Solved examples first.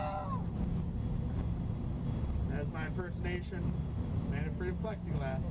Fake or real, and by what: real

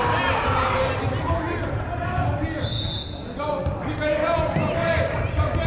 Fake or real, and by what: real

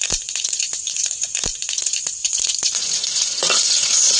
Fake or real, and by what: fake, vocoder, Vocos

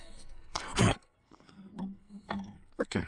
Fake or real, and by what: fake, codec, SNAC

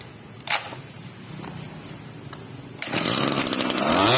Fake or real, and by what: real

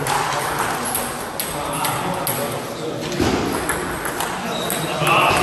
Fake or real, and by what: real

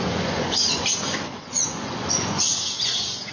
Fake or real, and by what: fake, vocoder, Vocos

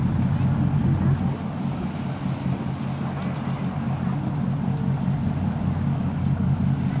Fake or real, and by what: real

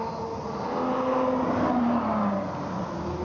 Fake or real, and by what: real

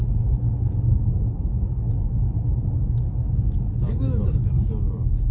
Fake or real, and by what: fake, codec, DAC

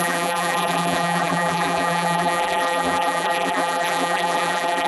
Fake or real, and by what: fake, vocoder, BigVGAN v2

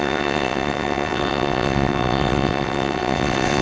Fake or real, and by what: fake, vocoder, WaveNeXt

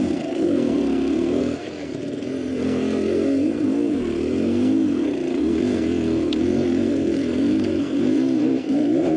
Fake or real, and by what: fake, codec, SNAC